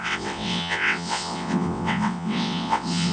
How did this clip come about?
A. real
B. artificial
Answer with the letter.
B